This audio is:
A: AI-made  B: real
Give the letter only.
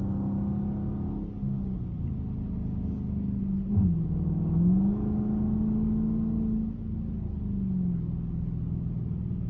B